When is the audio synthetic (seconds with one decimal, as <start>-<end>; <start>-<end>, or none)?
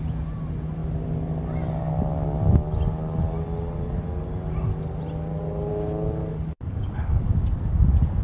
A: 6.2-7.4